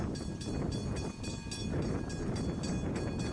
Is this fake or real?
real